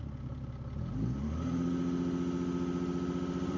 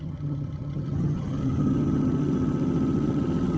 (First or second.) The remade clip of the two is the second